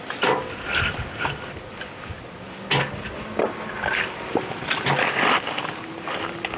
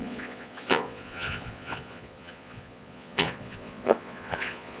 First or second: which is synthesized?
second